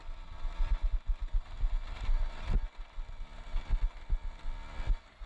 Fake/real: real